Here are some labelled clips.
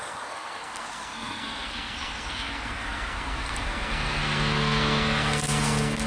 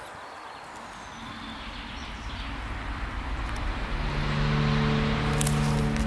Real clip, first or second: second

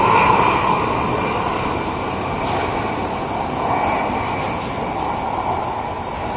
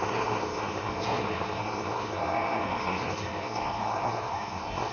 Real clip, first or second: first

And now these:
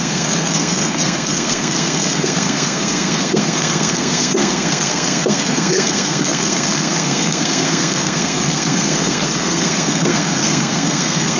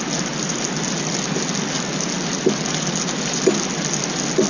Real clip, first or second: second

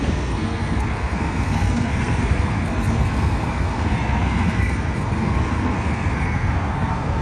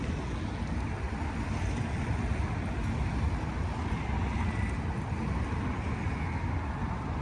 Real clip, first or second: second